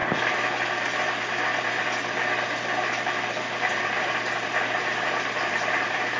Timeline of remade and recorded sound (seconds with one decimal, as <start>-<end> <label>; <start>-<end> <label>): 0.0-3.7 recorded; 3.7-6.2 remade